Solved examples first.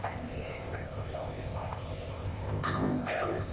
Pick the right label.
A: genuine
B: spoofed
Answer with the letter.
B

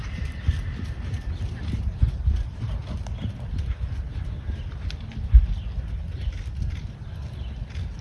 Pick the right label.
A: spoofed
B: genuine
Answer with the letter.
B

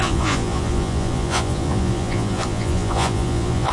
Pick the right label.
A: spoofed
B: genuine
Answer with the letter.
A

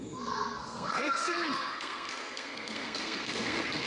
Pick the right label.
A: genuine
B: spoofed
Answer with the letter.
B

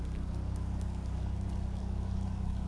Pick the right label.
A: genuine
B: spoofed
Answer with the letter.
B